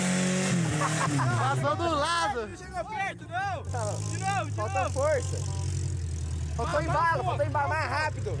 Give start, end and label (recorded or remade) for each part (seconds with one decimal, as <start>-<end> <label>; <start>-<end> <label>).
0.0-1.0 recorded; 1.0-1.7 remade; 1.7-2.5 recorded; 2.5-3.7 remade; 3.7-6.7 recorded; 6.7-7.3 remade; 7.3-8.4 recorded